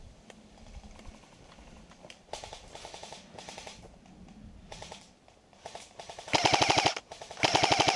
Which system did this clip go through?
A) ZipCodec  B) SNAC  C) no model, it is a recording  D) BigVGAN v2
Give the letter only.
D